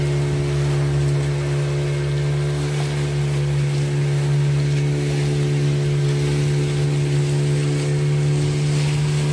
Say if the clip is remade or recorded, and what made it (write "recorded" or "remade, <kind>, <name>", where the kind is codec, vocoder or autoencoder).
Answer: recorded